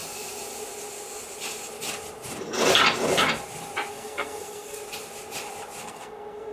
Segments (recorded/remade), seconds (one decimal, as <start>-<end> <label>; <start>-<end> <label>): 0.0-3.9 recorded; 3.9-4.8 remade; 4.8-5.8 recorded; 5.8-6.5 remade

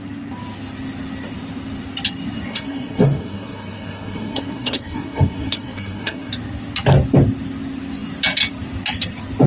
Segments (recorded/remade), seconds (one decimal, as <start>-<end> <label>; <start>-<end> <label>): 0.0-2.5 recorded; 2.5-6.3 remade; 6.3-9.5 recorded

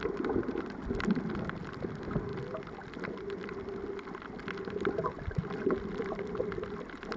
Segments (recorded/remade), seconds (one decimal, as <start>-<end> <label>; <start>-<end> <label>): 0.0-7.2 recorded

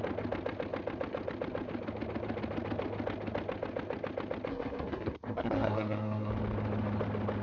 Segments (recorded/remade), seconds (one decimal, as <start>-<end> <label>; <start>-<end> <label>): 0.0-4.5 recorded; 4.5-6.3 remade; 6.3-7.4 recorded